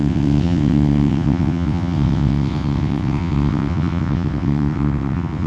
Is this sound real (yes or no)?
no